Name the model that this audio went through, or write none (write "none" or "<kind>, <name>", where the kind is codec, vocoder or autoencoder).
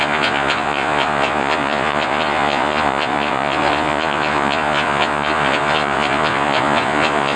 vocoder, Vocos